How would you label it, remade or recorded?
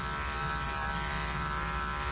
recorded